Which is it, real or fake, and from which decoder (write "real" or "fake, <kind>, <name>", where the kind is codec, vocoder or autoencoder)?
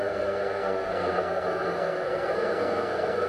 fake, codec, SNAC